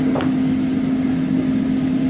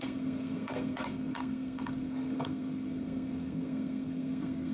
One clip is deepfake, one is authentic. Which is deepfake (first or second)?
second